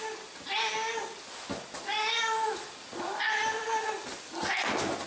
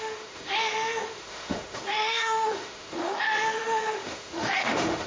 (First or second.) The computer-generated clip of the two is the second